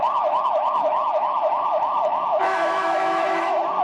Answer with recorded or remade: remade